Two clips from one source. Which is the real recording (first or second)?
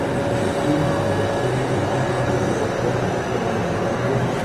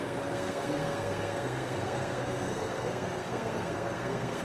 first